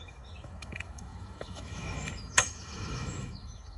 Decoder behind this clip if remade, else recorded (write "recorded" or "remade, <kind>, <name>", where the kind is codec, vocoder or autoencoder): remade, autoencoder, DAC-VAE